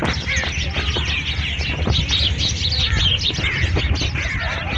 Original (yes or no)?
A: yes